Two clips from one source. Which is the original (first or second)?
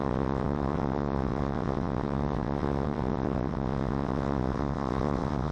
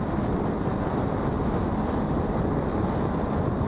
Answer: second